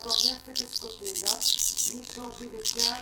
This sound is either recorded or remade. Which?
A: remade